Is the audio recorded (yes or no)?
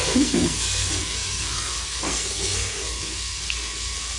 no